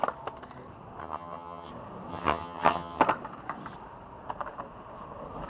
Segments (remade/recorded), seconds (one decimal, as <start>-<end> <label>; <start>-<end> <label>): 0.0-1.0 recorded; 1.0-1.7 remade; 1.7-2.1 recorded; 2.1-3.0 remade; 3.0-5.5 recorded